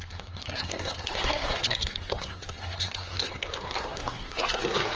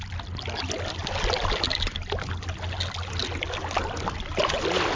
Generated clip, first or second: first